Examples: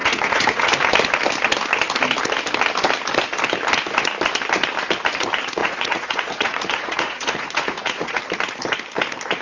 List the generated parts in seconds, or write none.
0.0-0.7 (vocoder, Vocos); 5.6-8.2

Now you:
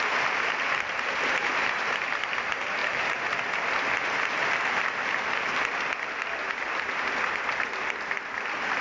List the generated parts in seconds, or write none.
2.8-3.4 (vocoder, BigVGAN v2)

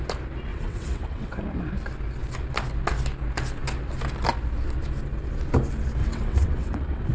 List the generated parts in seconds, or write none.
0.5-1.4 (vocoder, WaveNeXt); 6.0-7.1

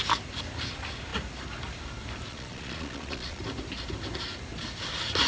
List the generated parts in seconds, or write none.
2.3-3.4 (vocoder, Vocos)

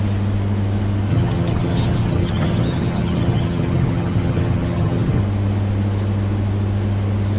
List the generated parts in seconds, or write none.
1.1-5.2 (vocoder, HiFi-GAN)

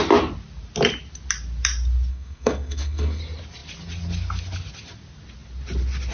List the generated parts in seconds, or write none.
2.1-3.2 (codec, SNAC)